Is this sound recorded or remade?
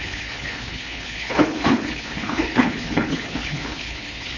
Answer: remade